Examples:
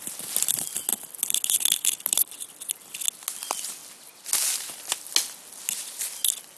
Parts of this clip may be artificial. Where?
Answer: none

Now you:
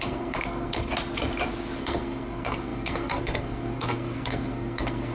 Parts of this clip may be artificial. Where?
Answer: 0.0-0.9 (codec, SNAC); 1.8-5.1

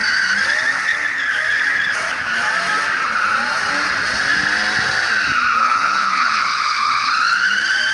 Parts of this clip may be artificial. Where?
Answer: 5.6-7.1 (codec, HILCodec)

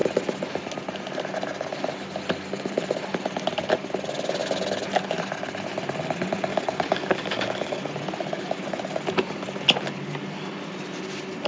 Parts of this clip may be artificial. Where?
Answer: 6.5-7.9 (codec, DAC)

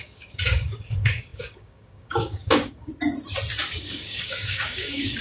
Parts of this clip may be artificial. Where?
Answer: 0.0-2.9 (codec, DAC); 3.7-5.2

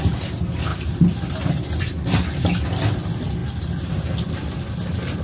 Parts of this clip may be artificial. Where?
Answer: none

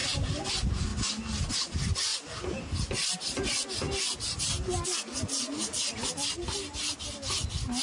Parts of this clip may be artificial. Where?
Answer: none